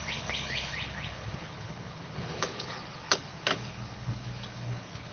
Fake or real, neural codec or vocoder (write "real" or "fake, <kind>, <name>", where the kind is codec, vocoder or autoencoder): fake, codec, HILCodec